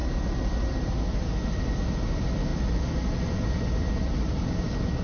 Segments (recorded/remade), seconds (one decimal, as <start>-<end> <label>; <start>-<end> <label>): 0.0-2.5 recorded; 2.5-5.0 remade